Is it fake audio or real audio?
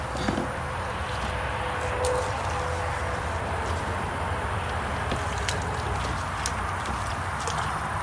real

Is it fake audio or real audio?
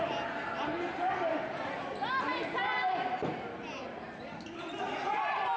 real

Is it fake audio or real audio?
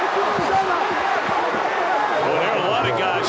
real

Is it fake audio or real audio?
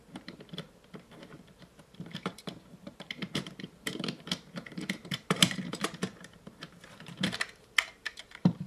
fake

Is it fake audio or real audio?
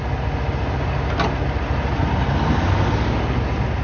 real